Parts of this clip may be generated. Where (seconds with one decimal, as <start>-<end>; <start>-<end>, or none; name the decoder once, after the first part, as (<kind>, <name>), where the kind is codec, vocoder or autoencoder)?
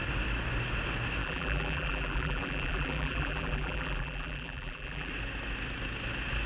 1.2-5.1 (vocoder, BigVGAN v2)